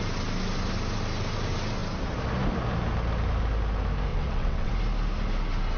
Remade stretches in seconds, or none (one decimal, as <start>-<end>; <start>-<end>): 4.1-4.7